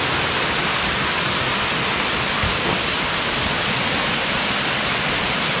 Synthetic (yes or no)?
no